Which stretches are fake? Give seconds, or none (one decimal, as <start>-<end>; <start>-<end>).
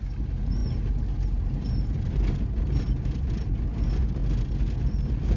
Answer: none